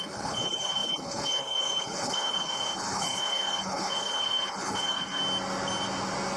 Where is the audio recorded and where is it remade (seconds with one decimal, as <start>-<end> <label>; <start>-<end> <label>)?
0.0-5.2 remade; 5.2-6.4 recorded